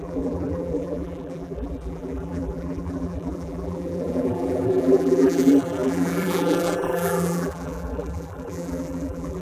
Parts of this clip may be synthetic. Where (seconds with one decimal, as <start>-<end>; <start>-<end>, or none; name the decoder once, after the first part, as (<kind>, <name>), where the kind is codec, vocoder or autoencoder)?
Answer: 0.0-9.4 (vocoder, BigVGAN v2)